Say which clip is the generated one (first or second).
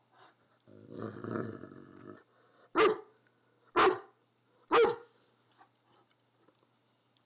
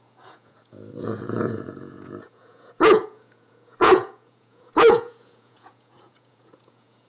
second